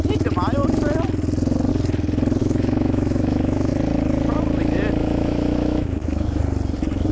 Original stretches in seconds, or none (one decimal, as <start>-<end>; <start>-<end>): 0.0-2.4; 3.7-5.0; 6.4-7.1